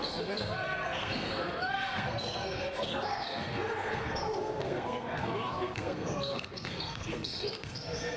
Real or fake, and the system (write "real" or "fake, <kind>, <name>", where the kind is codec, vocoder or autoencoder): fake, codec, SNAC